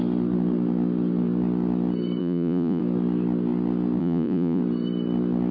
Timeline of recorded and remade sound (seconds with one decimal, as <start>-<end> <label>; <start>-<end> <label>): 0.0-2.2 recorded; 2.2-2.8 remade; 2.8-4.0 recorded; 4.0-4.6 remade; 4.6-5.5 recorded